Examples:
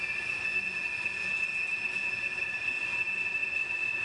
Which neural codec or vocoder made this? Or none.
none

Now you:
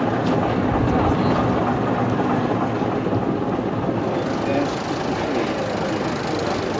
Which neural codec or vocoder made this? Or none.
none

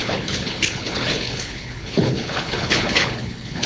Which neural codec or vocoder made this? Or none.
codec, HILCodec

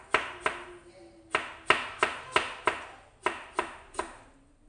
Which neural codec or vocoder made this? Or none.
none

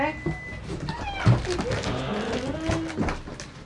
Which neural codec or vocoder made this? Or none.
none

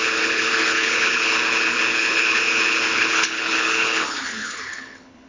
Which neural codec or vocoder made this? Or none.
codec, HILCodec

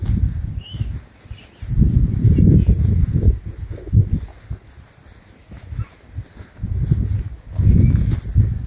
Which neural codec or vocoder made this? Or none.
none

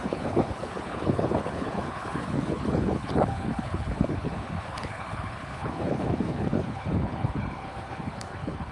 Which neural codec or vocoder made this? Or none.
codec, HILCodec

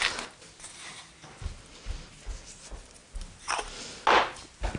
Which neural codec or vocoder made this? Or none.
none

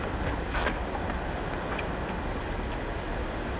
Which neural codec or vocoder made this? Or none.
none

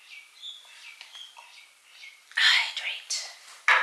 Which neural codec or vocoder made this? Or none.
none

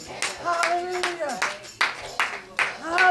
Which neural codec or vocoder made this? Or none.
none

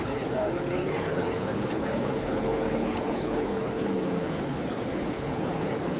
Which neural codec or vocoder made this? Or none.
codec, HILCodec